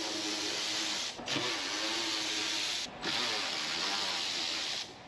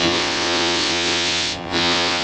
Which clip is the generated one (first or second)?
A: second